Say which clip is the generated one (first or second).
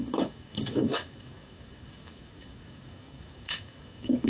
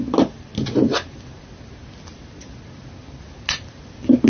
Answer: first